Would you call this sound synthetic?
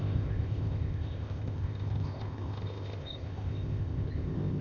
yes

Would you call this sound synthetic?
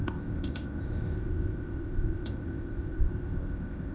yes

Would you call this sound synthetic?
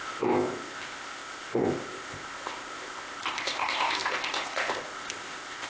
yes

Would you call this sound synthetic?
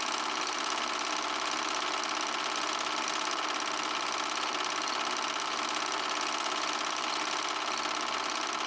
no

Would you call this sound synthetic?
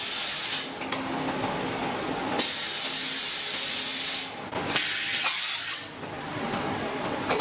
no